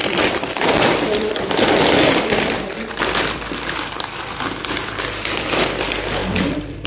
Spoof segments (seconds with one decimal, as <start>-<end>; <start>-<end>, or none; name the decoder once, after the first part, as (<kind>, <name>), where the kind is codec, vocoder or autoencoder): 0.0-3.0 (vocoder, BigVGAN v2); 6.2-6.9